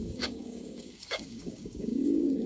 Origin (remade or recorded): remade